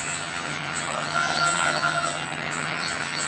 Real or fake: fake